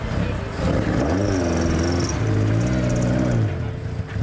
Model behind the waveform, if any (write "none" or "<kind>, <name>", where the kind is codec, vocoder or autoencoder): none